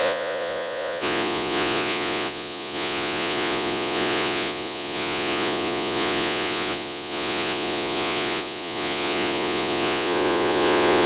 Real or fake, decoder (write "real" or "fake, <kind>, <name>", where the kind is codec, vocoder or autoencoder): fake, vocoder, Vocos